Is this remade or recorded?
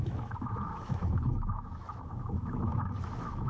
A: remade